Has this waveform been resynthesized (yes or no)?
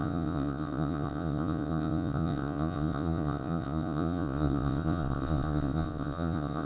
yes